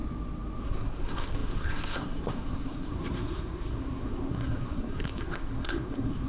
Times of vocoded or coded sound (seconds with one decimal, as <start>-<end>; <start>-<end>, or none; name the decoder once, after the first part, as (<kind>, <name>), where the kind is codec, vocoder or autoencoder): 0.6-6.3 (codec, SNAC)